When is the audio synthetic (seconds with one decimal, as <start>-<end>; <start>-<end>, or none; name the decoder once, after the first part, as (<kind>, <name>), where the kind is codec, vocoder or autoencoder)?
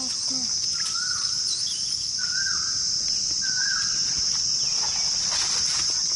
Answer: 1.8-2.3 (vocoder, Vocos); 3.0-3.8